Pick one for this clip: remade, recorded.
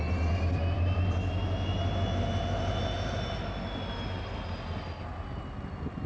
recorded